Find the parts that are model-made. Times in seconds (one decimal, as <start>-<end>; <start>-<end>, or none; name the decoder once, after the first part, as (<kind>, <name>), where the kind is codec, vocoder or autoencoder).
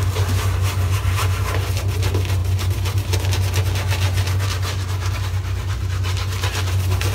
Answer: none